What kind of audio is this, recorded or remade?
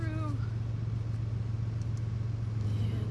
recorded